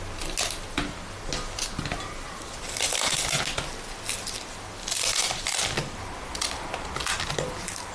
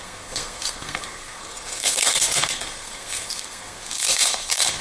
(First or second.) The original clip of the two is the first